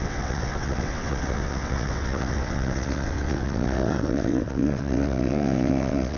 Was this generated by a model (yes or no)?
yes